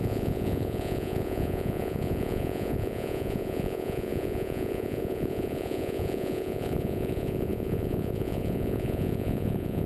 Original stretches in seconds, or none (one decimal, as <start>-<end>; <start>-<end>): none